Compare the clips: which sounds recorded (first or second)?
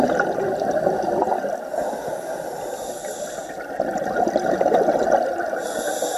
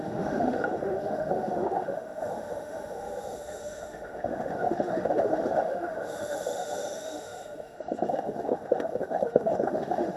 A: first